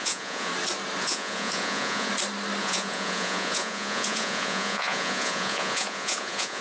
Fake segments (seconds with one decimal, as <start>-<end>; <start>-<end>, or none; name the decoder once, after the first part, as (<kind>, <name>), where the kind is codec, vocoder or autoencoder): 0.0-0.5 (vocoder, Vocos); 1.0-2.1; 2.6-6.6